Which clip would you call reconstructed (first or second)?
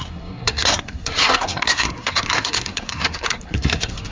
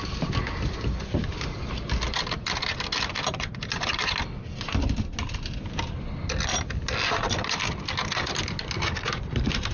first